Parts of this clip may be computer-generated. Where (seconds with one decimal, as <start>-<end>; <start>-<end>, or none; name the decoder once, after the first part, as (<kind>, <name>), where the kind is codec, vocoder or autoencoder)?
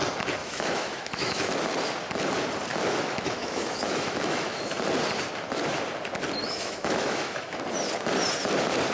0.4-1.5 (autoencoder, DAC-VAE); 2.7-4.6; 6.4-7.6